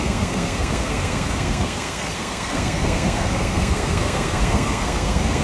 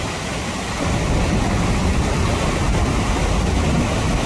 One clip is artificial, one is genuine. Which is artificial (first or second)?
first